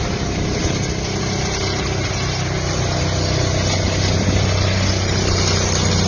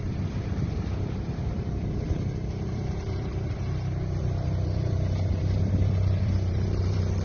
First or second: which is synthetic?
second